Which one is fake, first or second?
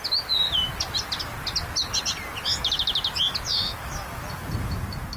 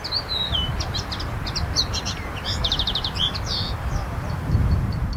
second